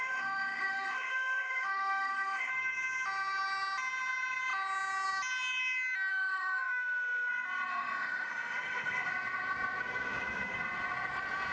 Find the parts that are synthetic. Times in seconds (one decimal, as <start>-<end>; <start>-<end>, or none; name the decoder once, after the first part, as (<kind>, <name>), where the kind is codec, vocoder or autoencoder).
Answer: 0.0-2.5 (autoencoder, DAC-VAE); 6.1-7.3; 7.7-9.1